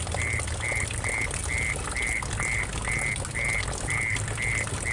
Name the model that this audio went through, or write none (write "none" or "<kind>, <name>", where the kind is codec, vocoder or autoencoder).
none